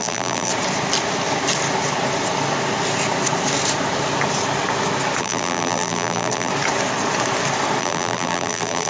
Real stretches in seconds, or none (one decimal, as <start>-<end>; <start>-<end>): 0.5-5.2; 6.5-7.8